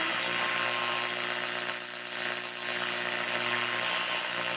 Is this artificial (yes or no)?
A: no